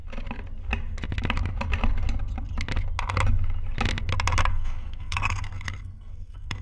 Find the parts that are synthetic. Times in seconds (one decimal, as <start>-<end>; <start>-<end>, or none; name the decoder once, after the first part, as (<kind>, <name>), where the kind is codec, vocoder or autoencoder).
4.5-6.6 (codec, SNAC)